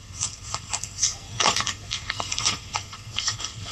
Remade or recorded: remade